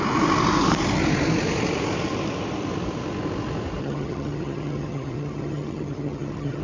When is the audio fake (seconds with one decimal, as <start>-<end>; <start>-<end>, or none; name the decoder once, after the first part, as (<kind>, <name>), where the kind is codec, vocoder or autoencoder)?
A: 3.8-6.6 (vocoder, HiFi-GAN)